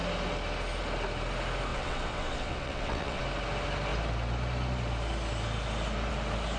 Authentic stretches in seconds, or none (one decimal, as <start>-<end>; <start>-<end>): 0.0-1.7; 3.2-6.6